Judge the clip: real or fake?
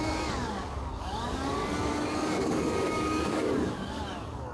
fake